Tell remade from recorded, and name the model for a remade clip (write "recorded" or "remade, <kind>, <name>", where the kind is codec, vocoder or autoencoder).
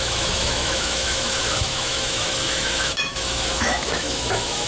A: remade, autoencoder, DAC-VAE